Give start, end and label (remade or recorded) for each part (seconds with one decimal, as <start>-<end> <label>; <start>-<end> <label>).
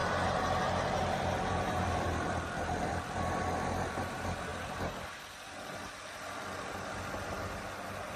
0.0-1.0 recorded; 1.0-4.0 remade; 4.0-8.2 recorded